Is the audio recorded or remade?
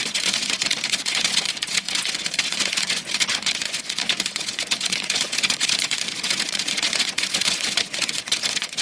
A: remade